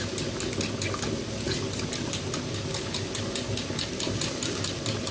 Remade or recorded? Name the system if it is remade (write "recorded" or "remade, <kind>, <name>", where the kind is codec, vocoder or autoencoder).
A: recorded